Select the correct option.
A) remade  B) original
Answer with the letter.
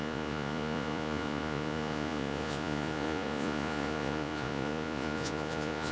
A